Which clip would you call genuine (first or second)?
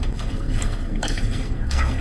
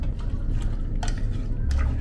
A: second